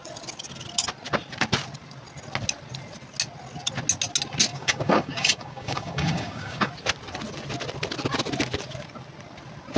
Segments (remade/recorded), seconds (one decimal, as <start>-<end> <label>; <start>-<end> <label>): 0.0-4.5 recorded; 4.5-6.7 remade; 6.7-9.8 recorded